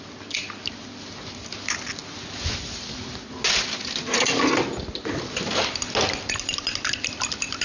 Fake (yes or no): no